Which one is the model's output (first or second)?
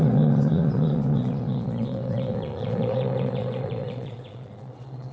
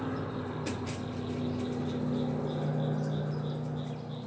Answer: first